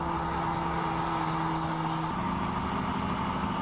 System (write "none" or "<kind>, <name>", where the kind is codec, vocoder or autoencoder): none